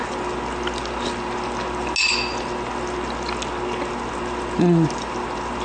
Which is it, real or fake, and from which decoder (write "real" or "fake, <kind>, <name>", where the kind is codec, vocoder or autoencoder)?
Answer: real